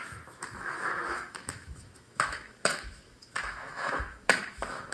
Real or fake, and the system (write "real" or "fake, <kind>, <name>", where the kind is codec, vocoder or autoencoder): fake, autoencoder, DAC-VAE